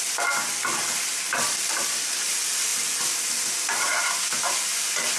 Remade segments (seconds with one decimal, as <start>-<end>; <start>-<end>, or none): none